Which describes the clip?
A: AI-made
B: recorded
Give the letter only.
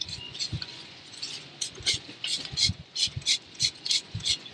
A